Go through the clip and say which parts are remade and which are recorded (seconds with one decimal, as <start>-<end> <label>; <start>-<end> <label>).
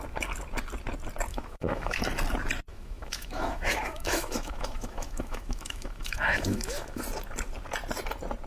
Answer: 0.0-1.3 recorded; 1.3-2.0 remade; 2.0-2.7 recorded; 2.7-7.0 remade; 7.0-8.5 recorded